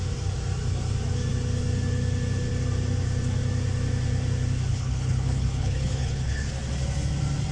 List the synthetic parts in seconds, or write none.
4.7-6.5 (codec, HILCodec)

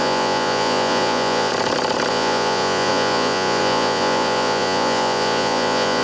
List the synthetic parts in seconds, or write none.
0.0-1.5 (vocoder, Vocos); 2.1-6.0

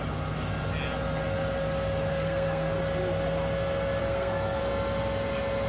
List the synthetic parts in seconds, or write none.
2.1-2.8 (codec, SNAC); 4.0-4.6